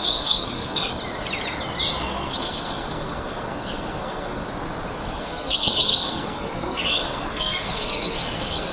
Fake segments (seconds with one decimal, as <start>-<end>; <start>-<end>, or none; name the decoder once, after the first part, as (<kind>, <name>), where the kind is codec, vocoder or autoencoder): 0.0-0.9 (codec, SNAC); 2.0-4.4; 5.1-8.7

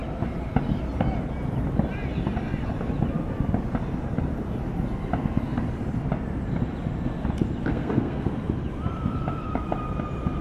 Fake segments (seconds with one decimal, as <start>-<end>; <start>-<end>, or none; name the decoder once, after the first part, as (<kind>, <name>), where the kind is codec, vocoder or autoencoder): 7.7-8.3 (codec, SNAC)

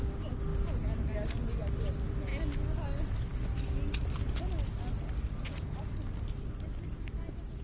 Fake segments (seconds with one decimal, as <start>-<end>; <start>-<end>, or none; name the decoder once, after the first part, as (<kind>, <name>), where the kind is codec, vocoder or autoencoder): none

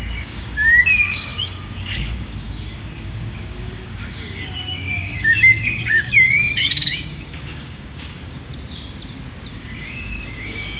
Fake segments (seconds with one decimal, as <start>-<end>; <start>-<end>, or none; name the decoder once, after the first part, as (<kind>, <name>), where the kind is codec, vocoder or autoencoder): 0.0-8.5 (codec, DAC); 9.5-10.8

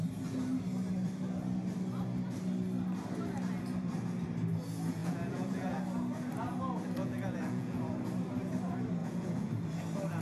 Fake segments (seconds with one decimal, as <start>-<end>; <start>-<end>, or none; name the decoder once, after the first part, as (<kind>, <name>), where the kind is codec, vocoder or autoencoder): 5.0-5.8 (vocoder, Vocos); 7.0-7.8; 9.0-9.5

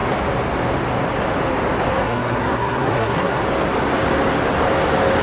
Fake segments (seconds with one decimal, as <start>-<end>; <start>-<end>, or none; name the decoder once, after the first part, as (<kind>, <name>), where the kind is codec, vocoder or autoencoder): 1.9-3.4 (codec, SNAC)

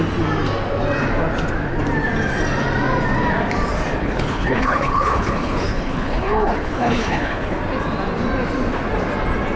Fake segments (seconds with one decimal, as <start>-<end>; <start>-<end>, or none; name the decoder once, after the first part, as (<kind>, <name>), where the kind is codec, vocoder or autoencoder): 4.0-7.6 (codec, HILCodec)